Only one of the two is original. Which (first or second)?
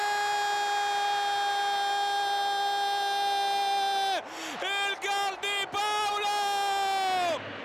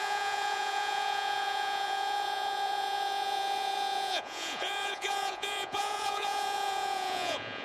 first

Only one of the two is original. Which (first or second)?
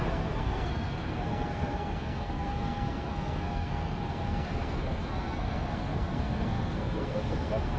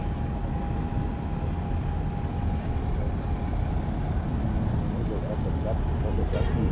second